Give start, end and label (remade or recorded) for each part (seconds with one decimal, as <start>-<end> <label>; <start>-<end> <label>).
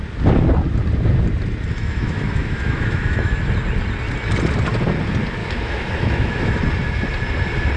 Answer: 0.0-1.8 recorded; 1.8-3.4 remade; 3.4-5.4 recorded; 5.4-6.6 remade; 6.6-7.8 recorded